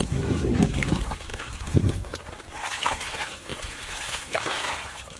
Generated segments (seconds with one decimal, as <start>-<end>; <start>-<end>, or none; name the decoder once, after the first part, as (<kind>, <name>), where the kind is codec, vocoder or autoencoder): 0.0-5.2 (codec, SNAC)